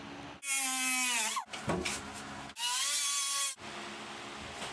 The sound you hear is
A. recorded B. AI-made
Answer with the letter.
A